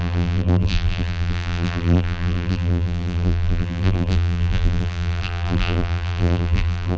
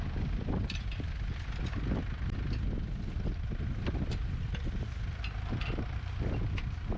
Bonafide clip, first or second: second